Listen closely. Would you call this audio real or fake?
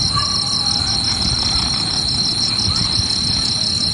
real